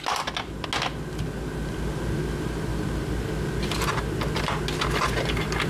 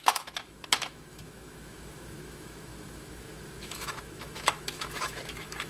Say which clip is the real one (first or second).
first